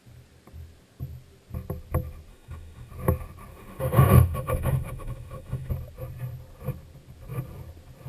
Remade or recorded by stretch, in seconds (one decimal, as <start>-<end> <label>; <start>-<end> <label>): 0.0-2.3 recorded; 2.3-2.9 remade; 2.9-3.5 recorded; 3.5-5.7 remade; 5.7-8.1 recorded